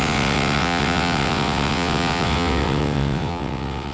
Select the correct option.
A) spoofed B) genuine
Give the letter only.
A